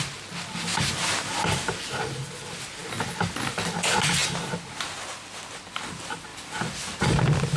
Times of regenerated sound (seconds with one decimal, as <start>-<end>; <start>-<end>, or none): none